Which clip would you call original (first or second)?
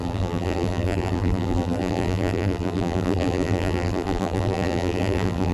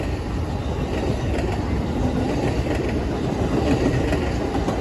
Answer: second